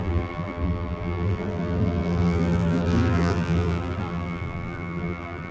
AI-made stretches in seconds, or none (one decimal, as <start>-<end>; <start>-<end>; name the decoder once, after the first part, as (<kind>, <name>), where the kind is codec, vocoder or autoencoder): 0.0-5.5 (vocoder, BigVGAN v2)